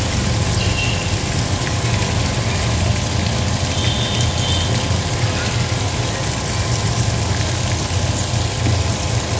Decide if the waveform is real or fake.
real